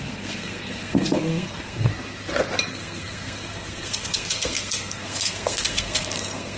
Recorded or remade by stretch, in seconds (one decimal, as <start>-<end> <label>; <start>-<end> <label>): 0.0-1.9 remade; 1.9-2.7 recorded; 2.7-6.6 remade